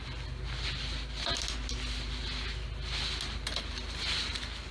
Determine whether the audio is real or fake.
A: real